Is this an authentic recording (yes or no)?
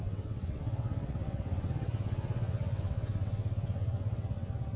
no